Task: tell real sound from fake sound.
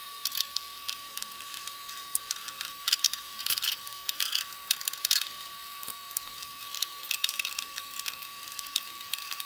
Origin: fake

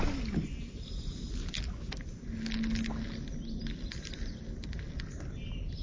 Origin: real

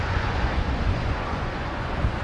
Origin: fake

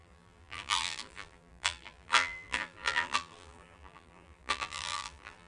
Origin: fake